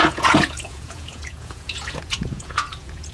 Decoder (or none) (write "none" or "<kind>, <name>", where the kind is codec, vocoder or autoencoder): vocoder, Vocos